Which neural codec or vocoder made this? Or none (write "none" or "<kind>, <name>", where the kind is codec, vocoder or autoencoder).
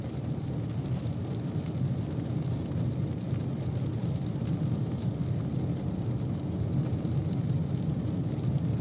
none